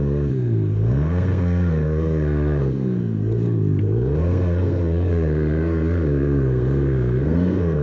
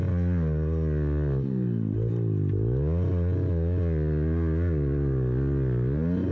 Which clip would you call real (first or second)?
second